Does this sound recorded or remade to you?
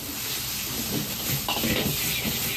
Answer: recorded